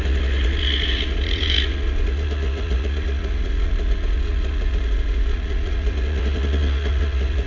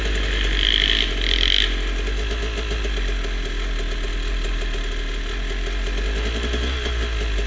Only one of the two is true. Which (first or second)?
second